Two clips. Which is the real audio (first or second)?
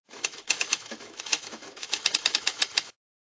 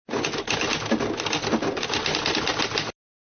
second